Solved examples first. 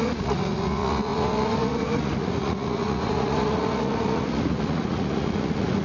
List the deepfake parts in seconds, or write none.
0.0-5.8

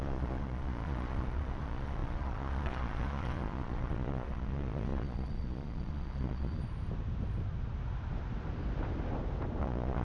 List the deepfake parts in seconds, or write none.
0.0-6.6; 9.6-10.0

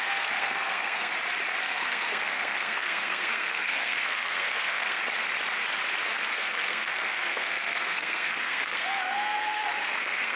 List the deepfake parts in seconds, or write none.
0.0-1.1; 1.6-5.0; 6.2-10.4

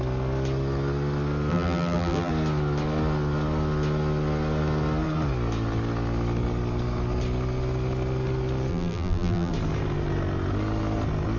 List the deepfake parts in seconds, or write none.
1.5-2.3; 8.7-9.5

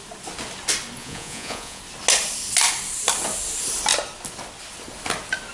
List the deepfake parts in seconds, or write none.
1.0-1.8

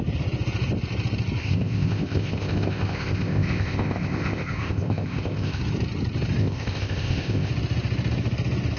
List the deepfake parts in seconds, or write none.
1.4-5.6; 6.4-7.5

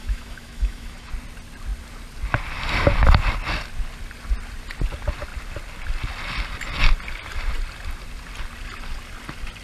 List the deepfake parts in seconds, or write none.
0.0-1.1

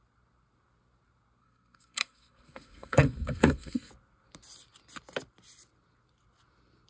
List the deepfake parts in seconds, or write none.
1.4-3.9